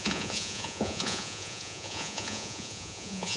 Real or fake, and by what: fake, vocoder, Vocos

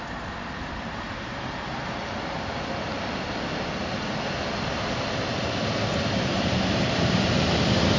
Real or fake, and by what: real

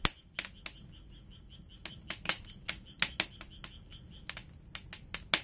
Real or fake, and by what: real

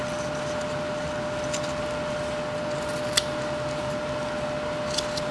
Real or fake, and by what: real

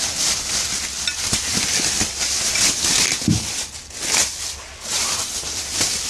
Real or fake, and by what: real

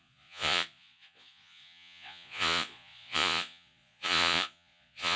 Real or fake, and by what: fake, vocoder, Vocos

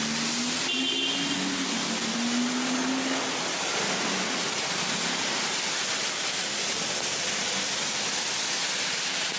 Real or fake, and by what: real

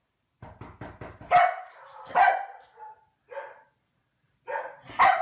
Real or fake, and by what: real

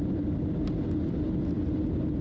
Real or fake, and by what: real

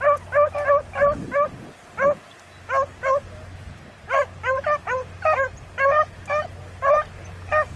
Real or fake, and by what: real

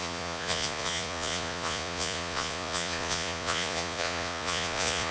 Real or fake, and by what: fake, vocoder, Vocos